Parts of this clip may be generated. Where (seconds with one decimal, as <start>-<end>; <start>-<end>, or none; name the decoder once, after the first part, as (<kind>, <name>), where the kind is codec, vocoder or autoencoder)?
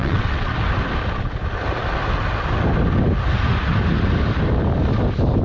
0.0-0.5 (vocoder, WaveNeXt)